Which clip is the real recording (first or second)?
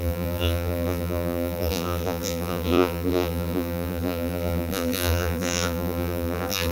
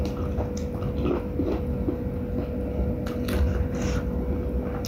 second